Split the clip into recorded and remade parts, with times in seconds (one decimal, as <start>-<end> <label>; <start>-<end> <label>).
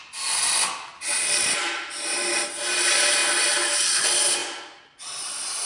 0.0-5.7 recorded